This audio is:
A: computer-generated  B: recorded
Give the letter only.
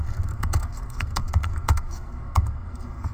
A